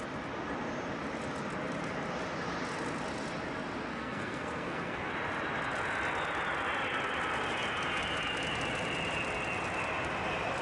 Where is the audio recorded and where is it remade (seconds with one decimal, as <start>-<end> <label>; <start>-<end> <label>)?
0.0-3.9 recorded; 3.9-5.1 remade; 5.1-10.6 recorded